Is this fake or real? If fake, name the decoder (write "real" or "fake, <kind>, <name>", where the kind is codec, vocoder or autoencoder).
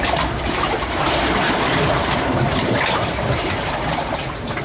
fake, vocoder, BigVGAN v2